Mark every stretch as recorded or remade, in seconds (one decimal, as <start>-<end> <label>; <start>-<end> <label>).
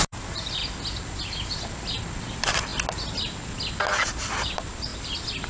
0.0-0.6 remade; 0.6-2.2 recorded; 2.2-2.7 remade; 2.7-3.9 recorded; 3.9-4.9 remade; 4.9-5.5 recorded